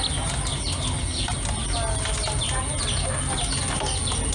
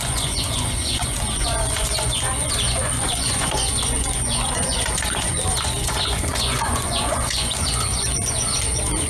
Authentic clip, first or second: first